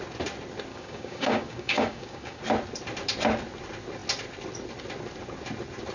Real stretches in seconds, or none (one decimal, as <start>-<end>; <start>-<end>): 0.0-0.7; 2.4-5.9